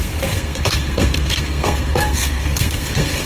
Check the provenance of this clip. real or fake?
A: fake